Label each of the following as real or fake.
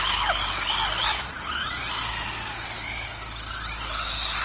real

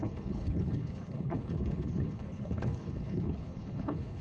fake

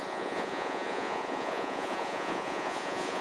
fake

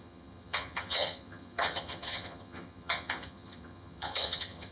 fake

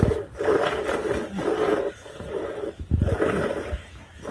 real